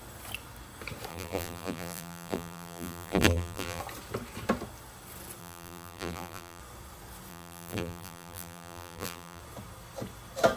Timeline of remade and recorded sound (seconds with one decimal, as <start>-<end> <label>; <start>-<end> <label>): 0.0-1.1 recorded; 1.1-3.8 remade; 3.8-5.4 recorded; 5.4-6.6 remade; 6.6-7.3 recorded; 7.3-9.4 remade; 9.4-10.6 recorded